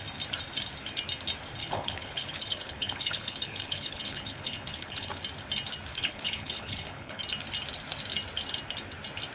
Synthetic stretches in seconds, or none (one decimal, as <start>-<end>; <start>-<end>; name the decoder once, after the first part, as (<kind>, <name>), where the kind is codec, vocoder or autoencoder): 1.6-5.1 (codec, HILCodec); 5.9-7.2